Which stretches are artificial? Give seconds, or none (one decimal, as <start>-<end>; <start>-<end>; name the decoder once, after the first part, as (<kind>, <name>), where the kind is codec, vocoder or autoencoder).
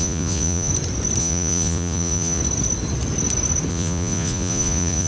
0.0-0.7 (vocoder, Vocos); 1.2-2.4; 3.7-5.1